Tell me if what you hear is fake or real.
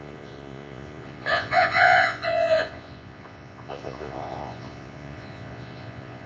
fake